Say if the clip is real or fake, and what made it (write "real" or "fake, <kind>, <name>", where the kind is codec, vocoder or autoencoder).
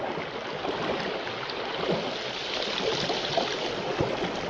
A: real